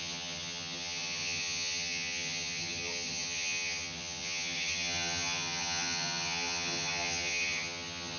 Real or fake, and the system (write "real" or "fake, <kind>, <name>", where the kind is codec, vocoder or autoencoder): fake, vocoder, HiFi-GAN